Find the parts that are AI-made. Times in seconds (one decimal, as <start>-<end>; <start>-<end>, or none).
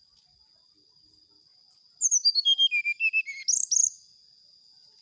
none